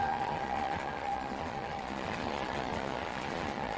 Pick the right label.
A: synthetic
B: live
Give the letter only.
A